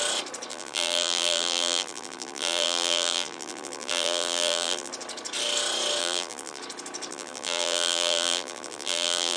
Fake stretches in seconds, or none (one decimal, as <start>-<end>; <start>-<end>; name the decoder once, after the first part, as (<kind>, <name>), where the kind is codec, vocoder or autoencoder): 0.5-4.9 (vocoder, BigVGAN v2); 6.0-6.6; 7.1-9.4